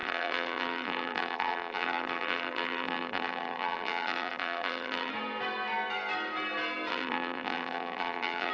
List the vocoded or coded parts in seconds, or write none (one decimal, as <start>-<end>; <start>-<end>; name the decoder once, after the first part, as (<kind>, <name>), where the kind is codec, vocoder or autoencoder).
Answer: 0.0-5.1 (vocoder, BigVGAN v2); 6.9-8.5